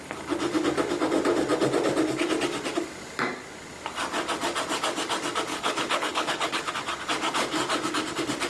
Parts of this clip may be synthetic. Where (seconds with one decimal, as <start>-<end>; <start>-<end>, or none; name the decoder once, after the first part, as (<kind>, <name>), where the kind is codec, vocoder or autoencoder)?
5.5-6.7 (codec, HILCodec)